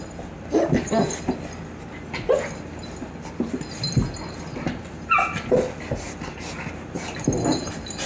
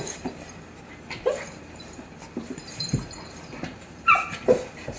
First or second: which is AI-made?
second